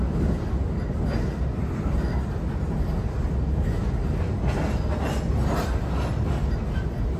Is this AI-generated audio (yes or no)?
no